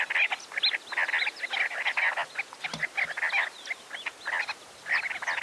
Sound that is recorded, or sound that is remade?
recorded